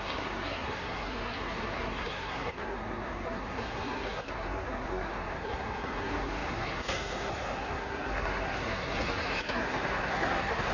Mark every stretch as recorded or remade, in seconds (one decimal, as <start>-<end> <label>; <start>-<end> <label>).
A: 0.0-10.7 remade